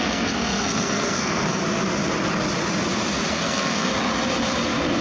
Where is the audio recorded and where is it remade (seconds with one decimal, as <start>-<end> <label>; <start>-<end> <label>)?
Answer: 0.0-1.6 remade; 1.6-3.3 recorded; 3.3-3.9 remade; 3.9-5.0 recorded